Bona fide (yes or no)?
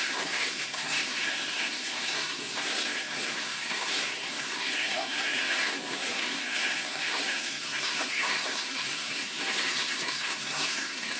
no